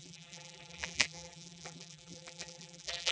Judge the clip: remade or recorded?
remade